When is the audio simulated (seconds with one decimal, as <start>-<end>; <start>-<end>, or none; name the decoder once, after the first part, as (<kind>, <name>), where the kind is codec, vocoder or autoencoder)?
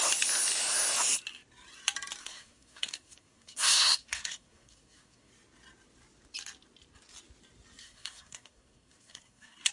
2.2-5.3 (codec, SNAC); 7.8-9.7